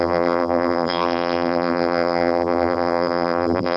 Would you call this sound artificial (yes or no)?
yes